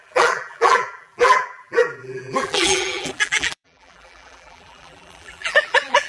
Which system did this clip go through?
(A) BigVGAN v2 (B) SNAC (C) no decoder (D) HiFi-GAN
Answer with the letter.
A